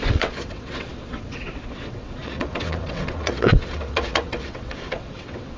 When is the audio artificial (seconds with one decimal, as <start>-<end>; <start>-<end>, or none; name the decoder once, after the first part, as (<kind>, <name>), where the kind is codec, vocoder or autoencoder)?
0.0-5.6 (vocoder, WaveNeXt)